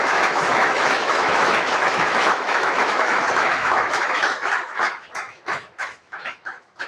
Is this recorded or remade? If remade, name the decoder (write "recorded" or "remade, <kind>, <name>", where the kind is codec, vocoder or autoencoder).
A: remade, autoencoder, DAC-VAE